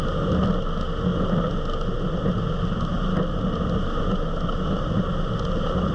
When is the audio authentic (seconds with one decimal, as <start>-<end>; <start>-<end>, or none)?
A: 0.0-5.9